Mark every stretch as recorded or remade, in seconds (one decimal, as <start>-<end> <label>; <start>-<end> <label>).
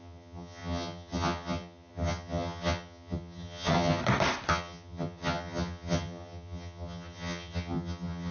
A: 0.0-4.0 remade; 4.0-4.5 recorded; 4.5-8.3 remade